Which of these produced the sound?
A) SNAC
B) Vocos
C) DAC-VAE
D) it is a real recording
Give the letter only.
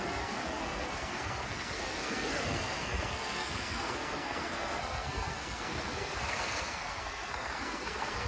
A